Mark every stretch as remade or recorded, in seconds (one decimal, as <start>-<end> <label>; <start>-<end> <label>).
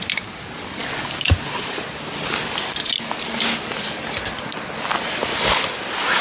0.0-6.2 recorded